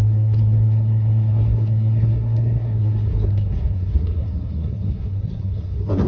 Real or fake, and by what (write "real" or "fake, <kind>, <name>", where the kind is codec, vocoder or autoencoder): fake, codec, SNAC